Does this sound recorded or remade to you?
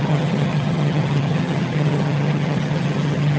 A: remade